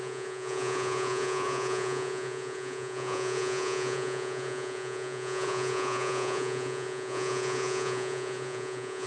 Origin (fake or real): fake